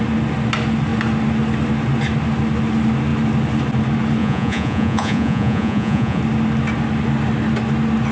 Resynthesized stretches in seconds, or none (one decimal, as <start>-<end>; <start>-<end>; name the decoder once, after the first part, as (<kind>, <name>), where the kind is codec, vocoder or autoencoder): 4.2-6.2 (vocoder, Vocos)